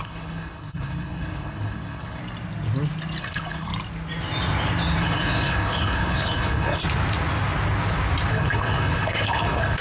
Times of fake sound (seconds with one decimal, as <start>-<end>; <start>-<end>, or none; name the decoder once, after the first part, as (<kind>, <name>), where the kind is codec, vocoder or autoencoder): 0.0-2.2 (codec, HILCodec); 3.2-3.7; 5.0-6.8; 8.3-9.8